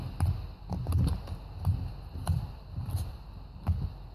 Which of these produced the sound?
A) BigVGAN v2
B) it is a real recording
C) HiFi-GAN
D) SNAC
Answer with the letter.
B